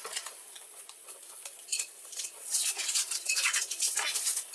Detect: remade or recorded remade